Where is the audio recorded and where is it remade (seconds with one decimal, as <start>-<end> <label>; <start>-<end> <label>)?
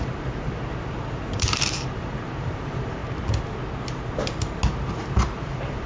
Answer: 0.0-3.0 remade; 3.0-4.7 recorded; 4.7-5.9 remade